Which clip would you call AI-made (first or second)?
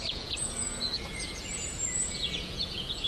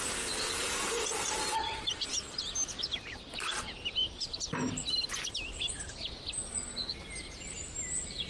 first